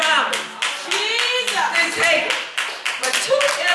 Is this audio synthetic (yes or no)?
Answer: no